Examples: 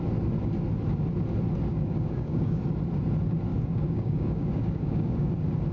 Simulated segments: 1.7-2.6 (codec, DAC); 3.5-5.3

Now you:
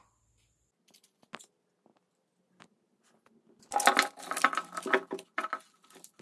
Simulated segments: none